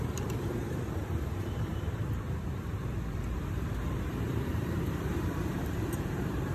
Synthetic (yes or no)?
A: yes